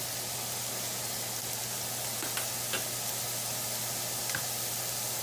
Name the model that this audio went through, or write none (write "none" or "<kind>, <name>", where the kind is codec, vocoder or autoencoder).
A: none